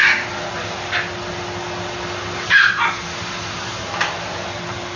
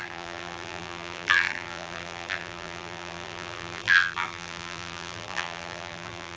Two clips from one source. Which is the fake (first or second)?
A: second